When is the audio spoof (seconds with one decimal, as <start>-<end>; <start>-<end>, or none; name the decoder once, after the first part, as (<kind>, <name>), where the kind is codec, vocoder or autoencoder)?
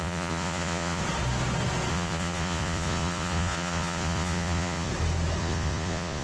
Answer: 0.0-1.0 (vocoder, Vocos); 1.9-4.9; 5.4-6.2